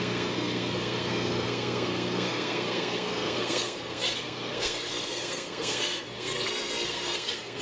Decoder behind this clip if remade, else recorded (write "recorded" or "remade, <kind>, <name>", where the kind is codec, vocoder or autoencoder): remade, codec, SNAC